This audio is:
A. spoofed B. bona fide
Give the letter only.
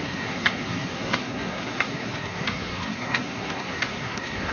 A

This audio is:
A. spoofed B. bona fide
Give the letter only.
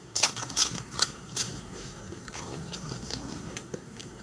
A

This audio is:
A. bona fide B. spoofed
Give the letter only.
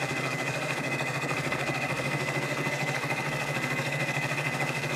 B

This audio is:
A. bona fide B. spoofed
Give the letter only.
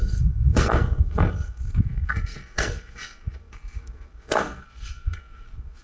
B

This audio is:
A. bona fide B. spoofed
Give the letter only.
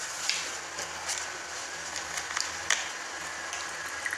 A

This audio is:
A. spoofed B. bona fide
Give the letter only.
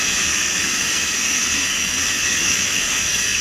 A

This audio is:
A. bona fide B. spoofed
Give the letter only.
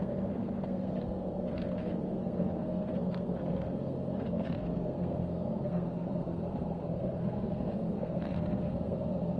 B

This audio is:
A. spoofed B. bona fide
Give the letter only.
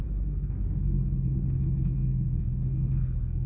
A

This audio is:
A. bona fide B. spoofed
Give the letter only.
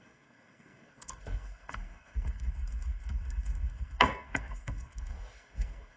B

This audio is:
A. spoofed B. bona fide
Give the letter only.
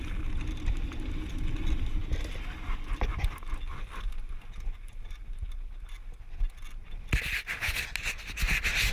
B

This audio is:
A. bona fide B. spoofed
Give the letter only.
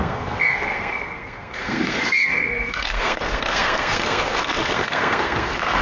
B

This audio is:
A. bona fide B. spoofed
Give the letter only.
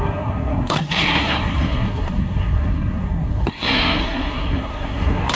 B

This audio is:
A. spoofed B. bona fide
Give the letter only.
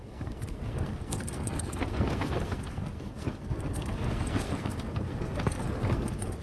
A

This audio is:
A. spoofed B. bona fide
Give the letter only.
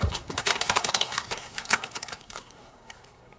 A